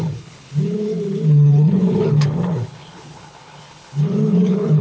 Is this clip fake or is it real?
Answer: fake